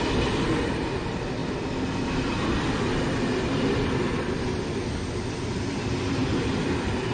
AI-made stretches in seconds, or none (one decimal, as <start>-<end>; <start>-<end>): none